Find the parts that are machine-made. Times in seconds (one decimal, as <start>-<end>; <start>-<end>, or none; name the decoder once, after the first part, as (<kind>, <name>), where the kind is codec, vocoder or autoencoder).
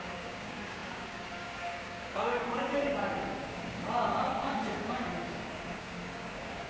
0.0-6.7 (codec, DAC)